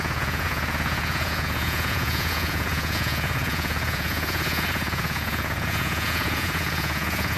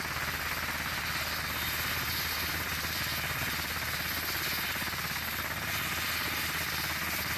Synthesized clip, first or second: first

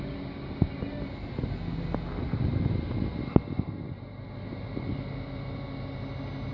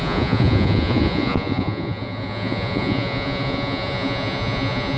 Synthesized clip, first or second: second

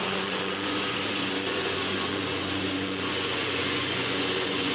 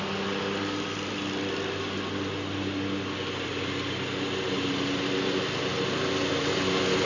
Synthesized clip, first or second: first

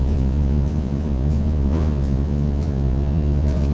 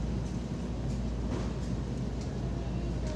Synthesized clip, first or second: first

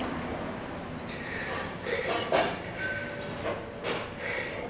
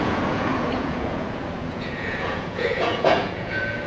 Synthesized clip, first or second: second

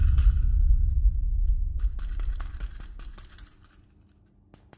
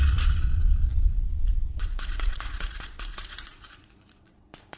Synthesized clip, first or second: second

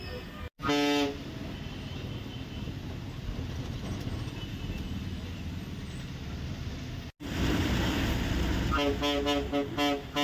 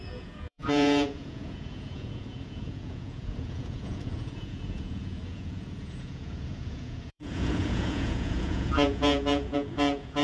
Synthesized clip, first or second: second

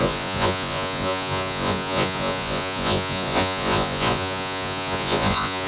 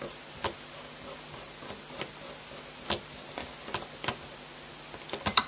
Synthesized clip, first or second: first